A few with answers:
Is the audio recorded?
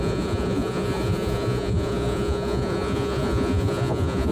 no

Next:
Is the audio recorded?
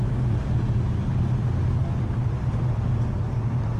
yes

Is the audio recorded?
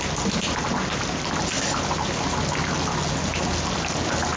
yes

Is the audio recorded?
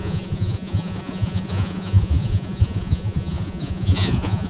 no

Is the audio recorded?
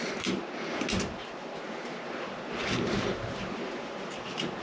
yes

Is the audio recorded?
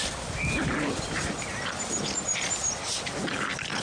yes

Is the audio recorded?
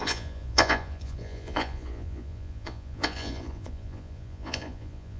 no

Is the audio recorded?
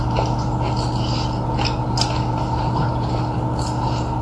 yes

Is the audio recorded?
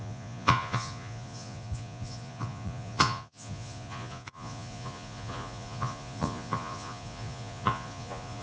no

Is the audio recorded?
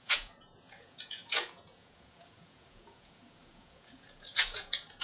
no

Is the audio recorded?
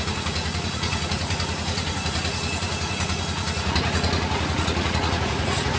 no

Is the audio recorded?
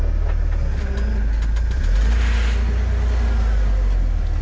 yes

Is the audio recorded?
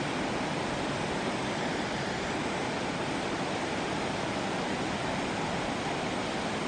yes